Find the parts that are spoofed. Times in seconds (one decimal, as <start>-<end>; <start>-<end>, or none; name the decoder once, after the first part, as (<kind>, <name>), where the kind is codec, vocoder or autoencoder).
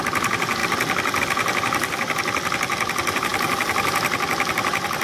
none